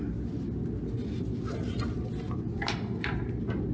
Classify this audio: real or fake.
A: real